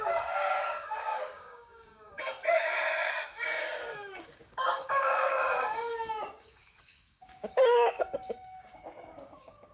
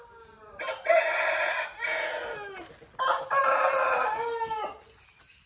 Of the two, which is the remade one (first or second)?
first